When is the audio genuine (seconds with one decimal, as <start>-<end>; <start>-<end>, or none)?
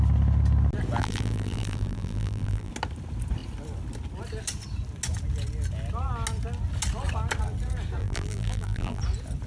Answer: 0.0-1.0; 2.7-8.0; 9.0-9.5